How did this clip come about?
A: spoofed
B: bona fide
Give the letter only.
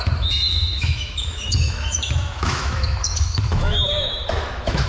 A